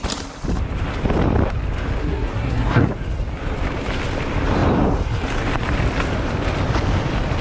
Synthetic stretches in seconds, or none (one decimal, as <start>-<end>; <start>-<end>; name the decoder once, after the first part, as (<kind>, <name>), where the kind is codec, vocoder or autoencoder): 2.0-2.9 (codec, SNAC)